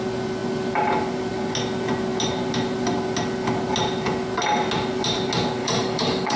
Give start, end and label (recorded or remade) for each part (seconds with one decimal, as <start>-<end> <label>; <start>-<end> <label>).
0.0-5.6 recorded; 5.6-6.4 remade